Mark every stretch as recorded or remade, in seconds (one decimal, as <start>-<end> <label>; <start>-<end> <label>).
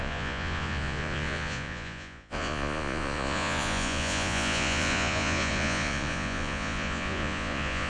0.0-7.9 remade